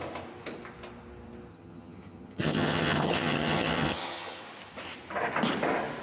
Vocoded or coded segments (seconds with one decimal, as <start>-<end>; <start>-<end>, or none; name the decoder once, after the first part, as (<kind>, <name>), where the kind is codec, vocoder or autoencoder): 1.5-4.4 (vocoder, HiFi-GAN)